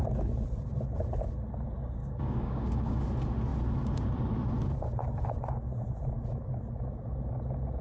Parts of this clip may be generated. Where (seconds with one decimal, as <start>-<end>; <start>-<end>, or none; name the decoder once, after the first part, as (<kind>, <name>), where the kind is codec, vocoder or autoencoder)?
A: 2.0-3.0 (codec, DAC)